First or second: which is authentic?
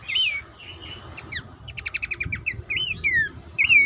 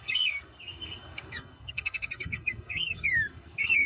first